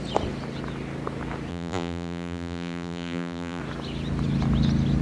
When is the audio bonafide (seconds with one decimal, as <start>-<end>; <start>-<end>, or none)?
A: 0.0-1.5; 3.6-5.0